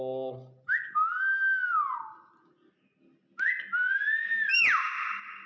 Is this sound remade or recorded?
recorded